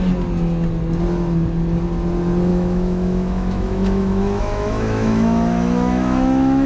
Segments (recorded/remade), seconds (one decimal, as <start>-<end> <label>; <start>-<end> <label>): 0.0-2.5 recorded; 2.5-6.7 remade